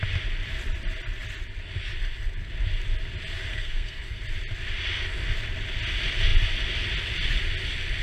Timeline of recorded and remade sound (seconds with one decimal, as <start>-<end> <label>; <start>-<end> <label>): 0.0-3.5 recorded; 3.5-4.2 remade; 4.2-8.0 recorded